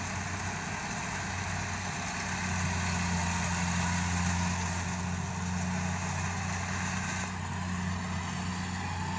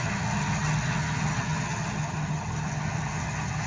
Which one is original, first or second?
first